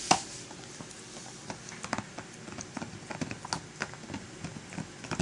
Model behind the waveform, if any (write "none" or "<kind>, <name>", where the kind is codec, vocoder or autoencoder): none